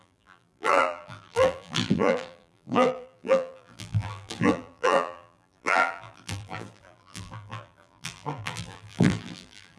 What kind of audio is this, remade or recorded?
remade